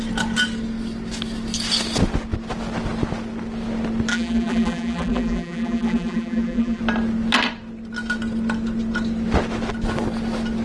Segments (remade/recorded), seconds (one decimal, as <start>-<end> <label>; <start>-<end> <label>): 0.0-4.1 recorded; 4.1-6.8 remade; 6.8-10.6 recorded